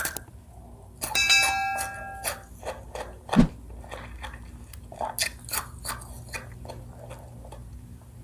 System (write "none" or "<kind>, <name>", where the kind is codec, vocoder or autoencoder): none